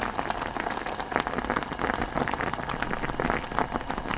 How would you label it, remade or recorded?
recorded